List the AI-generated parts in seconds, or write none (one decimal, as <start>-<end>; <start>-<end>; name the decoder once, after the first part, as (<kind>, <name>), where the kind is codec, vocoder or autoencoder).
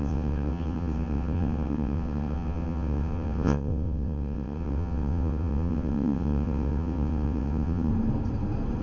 0.0-7.9 (vocoder, WaveNeXt)